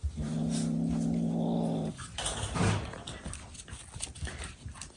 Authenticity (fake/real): real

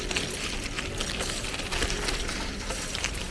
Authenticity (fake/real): real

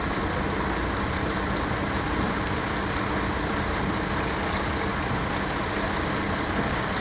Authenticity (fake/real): real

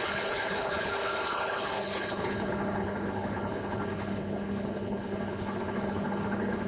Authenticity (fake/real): fake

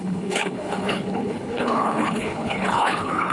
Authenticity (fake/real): fake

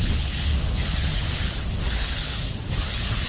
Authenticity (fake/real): fake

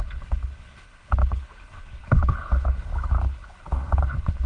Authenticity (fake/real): fake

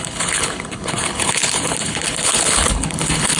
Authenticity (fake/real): fake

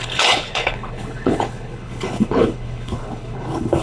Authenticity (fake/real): fake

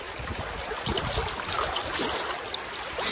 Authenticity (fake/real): real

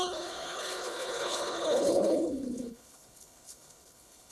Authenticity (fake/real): fake